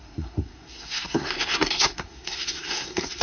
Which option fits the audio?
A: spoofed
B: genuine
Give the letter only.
A